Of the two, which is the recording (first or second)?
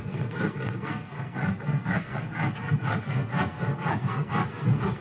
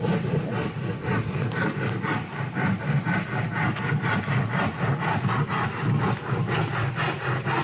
second